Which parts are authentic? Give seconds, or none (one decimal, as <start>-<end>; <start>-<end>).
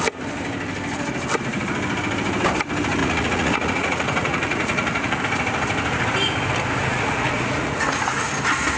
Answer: 0.0-3.0; 5.2-6.9; 8.3-8.8